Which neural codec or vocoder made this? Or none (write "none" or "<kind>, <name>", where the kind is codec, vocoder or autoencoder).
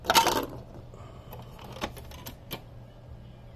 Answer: none